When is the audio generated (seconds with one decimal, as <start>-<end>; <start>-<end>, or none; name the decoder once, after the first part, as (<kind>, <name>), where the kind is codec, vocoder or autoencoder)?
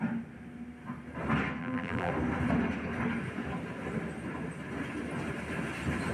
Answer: 1.6-2.1 (vocoder, BigVGAN v2)